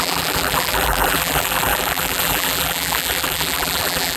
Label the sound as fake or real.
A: fake